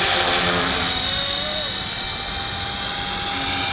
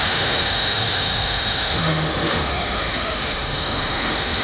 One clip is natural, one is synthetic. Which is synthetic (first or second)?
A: second